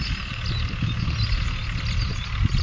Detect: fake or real real